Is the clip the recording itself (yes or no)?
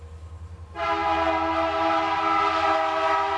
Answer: yes